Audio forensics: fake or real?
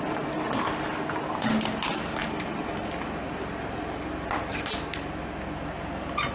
real